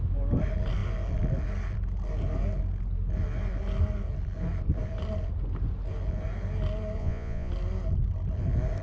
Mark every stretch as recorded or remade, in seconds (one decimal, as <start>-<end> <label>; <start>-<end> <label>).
0.0-7.0 recorded; 7.0-7.5 remade; 7.5-8.8 recorded